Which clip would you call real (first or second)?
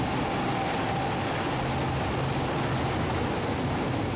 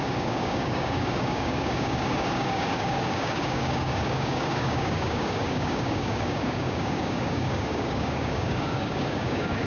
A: first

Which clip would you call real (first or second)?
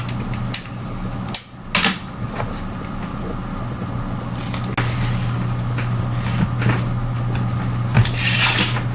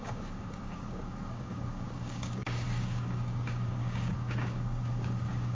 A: first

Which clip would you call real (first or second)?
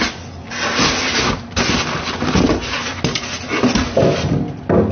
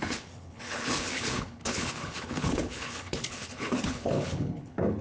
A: first